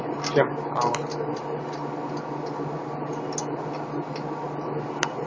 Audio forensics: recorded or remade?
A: recorded